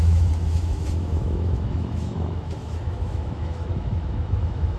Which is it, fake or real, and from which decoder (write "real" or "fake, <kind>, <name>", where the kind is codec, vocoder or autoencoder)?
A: fake, autoencoder, DAC-VAE